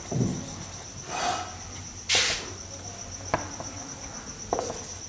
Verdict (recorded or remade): recorded